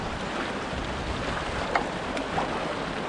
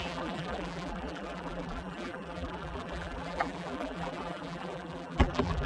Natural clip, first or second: first